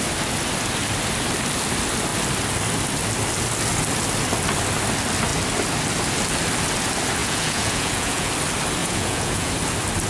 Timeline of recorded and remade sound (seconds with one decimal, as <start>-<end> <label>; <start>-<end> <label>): 0.0-7.2 recorded; 7.2-8.3 remade; 8.3-8.8 recorded; 8.8-9.5 remade; 9.5-10.1 recorded